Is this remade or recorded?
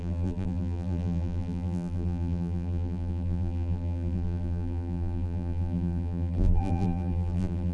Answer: remade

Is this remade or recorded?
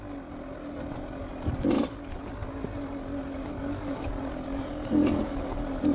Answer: recorded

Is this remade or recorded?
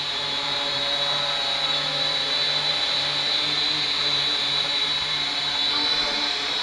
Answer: remade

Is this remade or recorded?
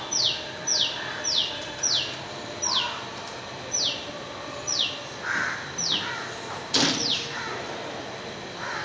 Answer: recorded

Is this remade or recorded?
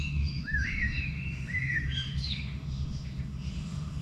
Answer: remade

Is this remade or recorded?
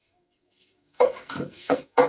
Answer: remade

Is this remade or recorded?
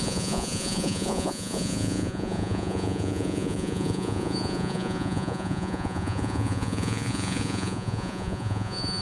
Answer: remade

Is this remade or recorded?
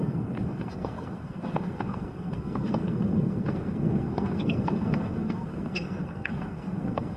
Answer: remade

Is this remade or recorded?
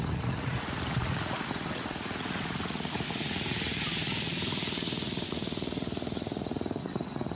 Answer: remade